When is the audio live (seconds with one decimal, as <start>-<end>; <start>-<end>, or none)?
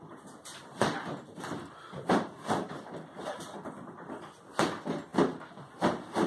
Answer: 0.0-0.5; 4.3-5.1